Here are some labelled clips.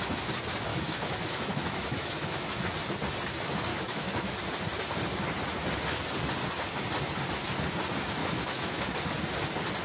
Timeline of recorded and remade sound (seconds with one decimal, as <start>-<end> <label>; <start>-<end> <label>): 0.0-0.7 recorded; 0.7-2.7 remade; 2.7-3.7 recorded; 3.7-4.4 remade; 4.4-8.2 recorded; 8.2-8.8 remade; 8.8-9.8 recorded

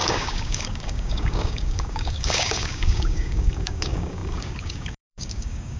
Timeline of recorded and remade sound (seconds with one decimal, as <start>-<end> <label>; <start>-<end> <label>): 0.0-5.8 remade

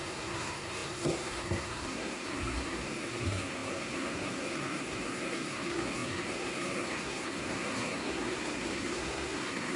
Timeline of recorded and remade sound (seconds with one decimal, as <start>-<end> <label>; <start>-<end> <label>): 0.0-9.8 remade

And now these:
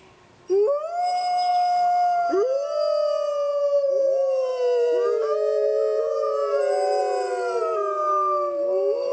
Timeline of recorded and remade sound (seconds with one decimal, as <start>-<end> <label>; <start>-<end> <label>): 0.0-9.1 recorded

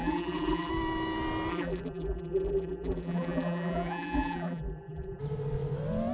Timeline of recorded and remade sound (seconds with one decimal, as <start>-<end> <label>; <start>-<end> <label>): 0.0-0.7 remade; 0.7-1.5 recorded; 1.5-5.2 remade; 5.2-6.1 recorded

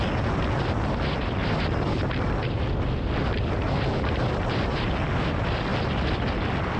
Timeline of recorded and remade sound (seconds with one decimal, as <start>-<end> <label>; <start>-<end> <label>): 0.0-1.4 recorded; 1.4-4.2 remade; 4.2-5.7 recorded; 5.7-6.3 remade; 6.3-6.8 recorded